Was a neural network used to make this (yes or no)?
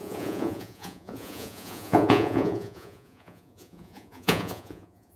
yes